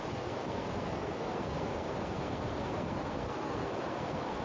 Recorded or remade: remade